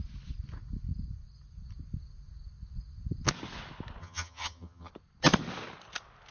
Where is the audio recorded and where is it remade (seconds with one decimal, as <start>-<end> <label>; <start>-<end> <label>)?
0.0-4.0 recorded; 4.0-4.9 remade; 4.9-6.3 recorded